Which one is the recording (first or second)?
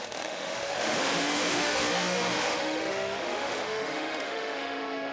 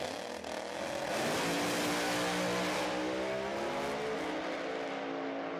second